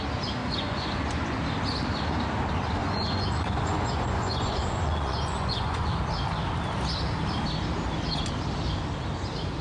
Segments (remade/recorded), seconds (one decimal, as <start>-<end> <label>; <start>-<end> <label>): 0.0-0.4 recorded; 0.4-1.4 remade; 1.4-2.8 recorded; 2.8-5.9 remade; 5.9-9.6 recorded